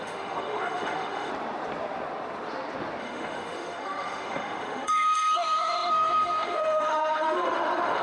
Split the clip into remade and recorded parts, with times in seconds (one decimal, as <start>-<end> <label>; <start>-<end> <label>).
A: 0.0-1.3 remade; 1.3-3.0 recorded; 3.0-8.0 remade